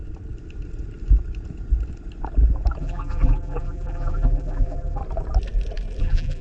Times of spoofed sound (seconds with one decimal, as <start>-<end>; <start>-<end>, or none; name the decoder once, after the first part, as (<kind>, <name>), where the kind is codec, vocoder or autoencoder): 2.8-5.0 (vocoder, BigVGAN v2); 6.0-6.4